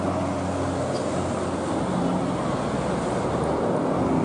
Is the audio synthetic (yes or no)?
no